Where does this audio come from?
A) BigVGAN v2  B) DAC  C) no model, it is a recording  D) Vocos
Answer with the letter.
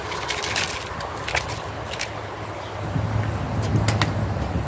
C